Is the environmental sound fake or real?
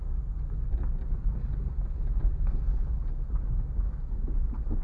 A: real